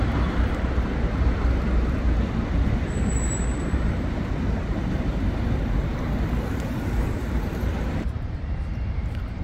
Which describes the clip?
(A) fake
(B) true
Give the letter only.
A